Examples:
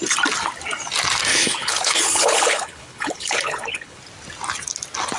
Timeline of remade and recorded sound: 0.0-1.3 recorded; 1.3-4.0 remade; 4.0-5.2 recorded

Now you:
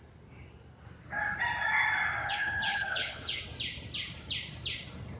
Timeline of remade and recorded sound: 0.0-2.2 recorded; 2.2-3.4 remade; 3.4-5.2 recorded

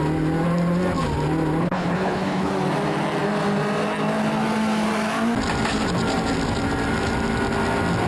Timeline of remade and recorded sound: 0.0-1.6 recorded; 1.6-2.5 remade; 2.5-8.1 recorded

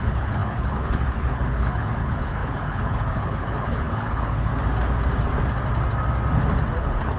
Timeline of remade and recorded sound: 0.0-4.5 remade; 4.5-6.8 recorded; 6.8-7.2 remade

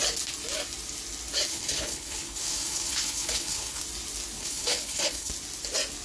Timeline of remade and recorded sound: 0.0-1.5 recorded; 1.5-3.8 remade; 3.8-4.4 recorded; 4.4-5.3 remade; 5.3-6.0 recorded

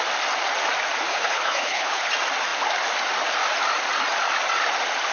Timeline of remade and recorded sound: 0.0-1.1 recorded; 1.1-2.1 remade; 2.1-5.1 recorded

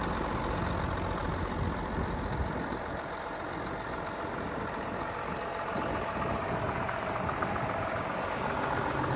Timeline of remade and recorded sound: 0.0-9.2 recorded